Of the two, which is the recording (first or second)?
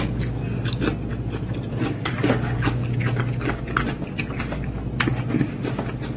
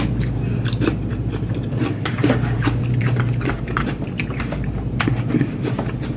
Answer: first